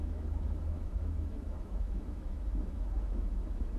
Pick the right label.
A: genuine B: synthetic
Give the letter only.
B